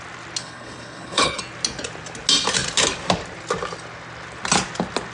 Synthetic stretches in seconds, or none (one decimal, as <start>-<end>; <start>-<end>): 0.4-1.4